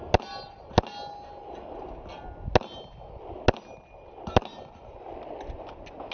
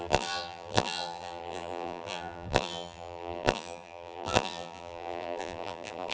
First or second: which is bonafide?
first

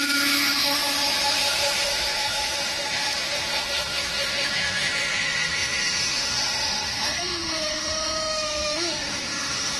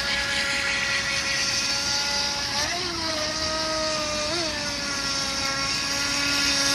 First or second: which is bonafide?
second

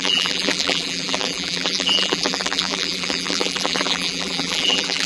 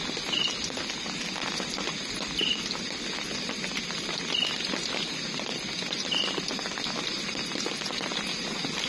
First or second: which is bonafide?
second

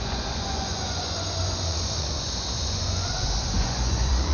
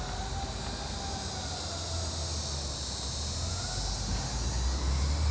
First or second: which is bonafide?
second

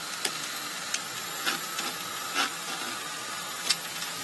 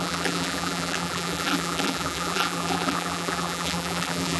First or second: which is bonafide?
first